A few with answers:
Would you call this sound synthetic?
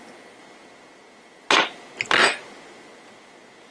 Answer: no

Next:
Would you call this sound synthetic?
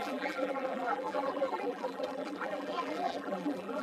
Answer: yes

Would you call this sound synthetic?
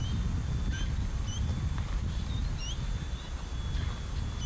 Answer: no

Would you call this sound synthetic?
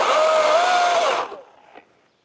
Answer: no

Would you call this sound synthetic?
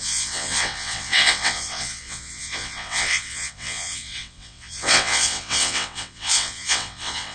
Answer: yes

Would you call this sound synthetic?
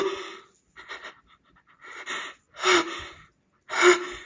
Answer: no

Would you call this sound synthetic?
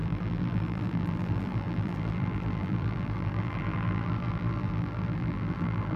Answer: yes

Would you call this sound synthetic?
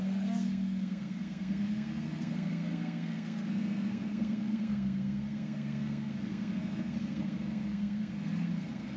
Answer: yes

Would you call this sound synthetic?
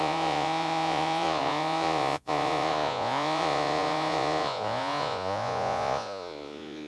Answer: yes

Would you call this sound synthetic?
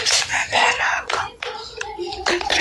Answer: yes